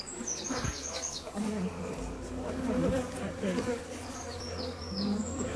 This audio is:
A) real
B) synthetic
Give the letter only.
B